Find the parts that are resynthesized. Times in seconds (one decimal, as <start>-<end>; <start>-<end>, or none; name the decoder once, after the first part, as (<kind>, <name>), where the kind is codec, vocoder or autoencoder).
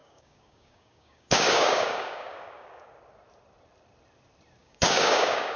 0.0-2.9 (codec, DAC); 4.6-5.6